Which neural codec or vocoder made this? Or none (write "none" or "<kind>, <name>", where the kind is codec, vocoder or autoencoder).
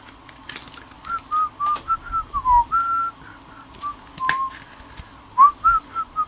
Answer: none